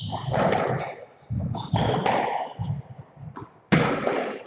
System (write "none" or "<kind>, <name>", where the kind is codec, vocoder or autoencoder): none